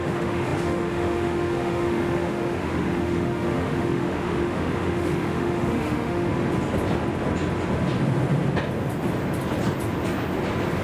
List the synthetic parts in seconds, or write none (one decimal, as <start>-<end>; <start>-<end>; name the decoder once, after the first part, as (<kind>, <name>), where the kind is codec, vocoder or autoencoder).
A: 0.0-6.3 (autoencoder, DAC-VAE)